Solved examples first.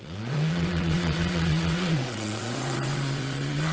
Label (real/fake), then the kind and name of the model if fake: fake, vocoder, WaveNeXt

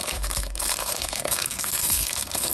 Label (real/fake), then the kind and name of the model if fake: fake, codec, SNAC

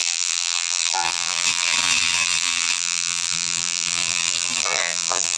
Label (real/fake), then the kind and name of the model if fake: fake, vocoder, BigVGAN v2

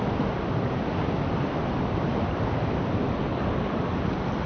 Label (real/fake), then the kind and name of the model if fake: real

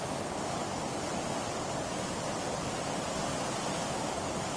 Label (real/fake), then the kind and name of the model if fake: real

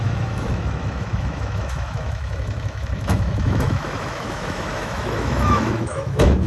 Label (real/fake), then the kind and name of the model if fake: fake, autoencoder, DAC-VAE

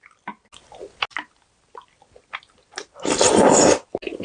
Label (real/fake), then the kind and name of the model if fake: real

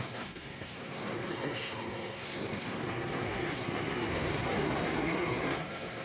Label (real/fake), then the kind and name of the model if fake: fake, codec, SNAC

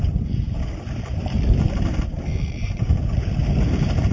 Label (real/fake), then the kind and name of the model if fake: fake, vocoder, BigVGAN v2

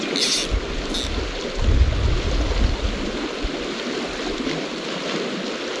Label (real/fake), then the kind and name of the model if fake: real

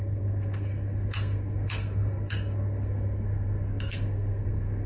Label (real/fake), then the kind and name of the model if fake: fake, codec, SNAC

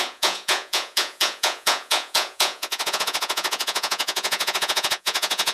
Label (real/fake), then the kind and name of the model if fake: fake, vocoder, Vocos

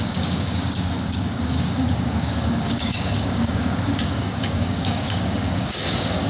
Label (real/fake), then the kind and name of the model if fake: fake, codec, DAC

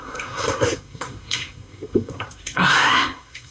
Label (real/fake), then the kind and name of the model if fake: fake, codec, SNAC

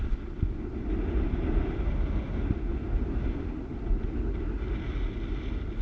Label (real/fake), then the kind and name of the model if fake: real